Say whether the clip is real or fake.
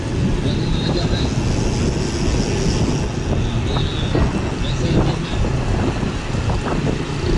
real